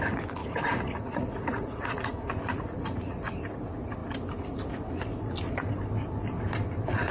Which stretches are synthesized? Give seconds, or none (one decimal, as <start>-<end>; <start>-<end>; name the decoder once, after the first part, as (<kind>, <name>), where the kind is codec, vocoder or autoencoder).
0.4-3.2 (vocoder, Vocos)